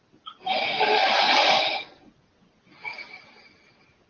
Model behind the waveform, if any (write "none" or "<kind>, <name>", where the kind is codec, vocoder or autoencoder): none